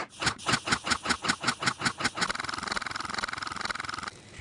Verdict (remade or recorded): recorded